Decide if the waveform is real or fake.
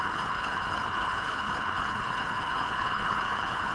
fake